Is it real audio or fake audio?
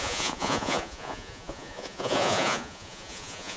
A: fake